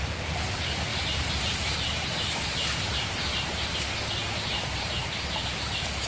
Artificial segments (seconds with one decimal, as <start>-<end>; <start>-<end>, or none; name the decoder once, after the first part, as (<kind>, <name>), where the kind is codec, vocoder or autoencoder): 0.9-3.8 (vocoder, BigVGAN v2); 4.5-5.0